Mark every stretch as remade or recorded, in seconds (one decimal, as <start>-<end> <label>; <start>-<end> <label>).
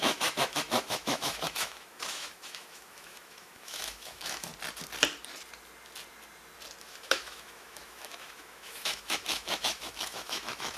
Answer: 0.0-4.5 remade; 4.5-6.8 recorded; 6.8-10.8 remade